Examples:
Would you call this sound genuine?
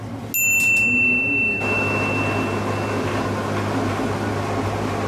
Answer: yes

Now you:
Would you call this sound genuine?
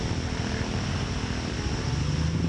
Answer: yes